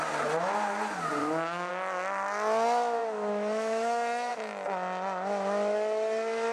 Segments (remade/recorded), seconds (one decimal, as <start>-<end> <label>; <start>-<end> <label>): 0.0-1.2 recorded; 1.2-1.7 remade; 1.7-3.0 recorded; 3.0-4.3 remade; 4.3-6.5 recorded